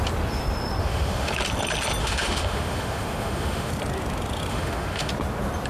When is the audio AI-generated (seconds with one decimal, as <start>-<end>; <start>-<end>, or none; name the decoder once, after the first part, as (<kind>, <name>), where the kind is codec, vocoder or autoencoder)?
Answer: 0.8-1.3 (autoencoder, DAC-VAE); 2.0-3.7; 4.5-5.1